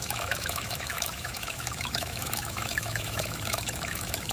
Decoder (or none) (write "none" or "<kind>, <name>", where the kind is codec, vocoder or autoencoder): autoencoder, DAC-VAE